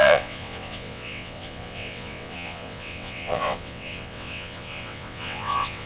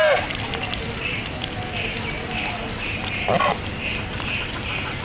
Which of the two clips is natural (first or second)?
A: second